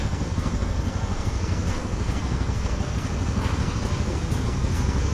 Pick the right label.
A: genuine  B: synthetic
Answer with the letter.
B